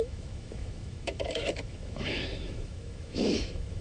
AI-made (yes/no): yes